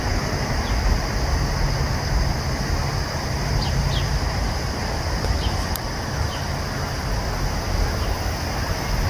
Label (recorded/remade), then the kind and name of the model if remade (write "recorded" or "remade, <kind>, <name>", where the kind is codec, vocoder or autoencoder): recorded